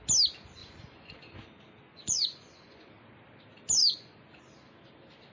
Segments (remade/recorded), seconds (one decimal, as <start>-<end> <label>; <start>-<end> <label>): 0.0-0.6 recorded; 0.6-1.4 remade; 1.4-1.9 recorded; 1.9-2.9 remade; 2.9-3.8 recorded; 3.8-4.4 remade; 4.4-5.3 recorded